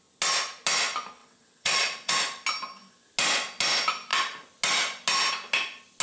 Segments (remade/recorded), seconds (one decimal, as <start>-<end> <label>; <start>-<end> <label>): 0.0-1.2 recorded; 1.2-2.1 remade; 2.1-6.0 recorded